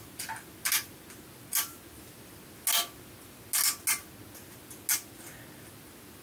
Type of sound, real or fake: real